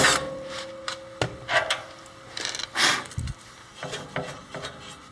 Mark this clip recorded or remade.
recorded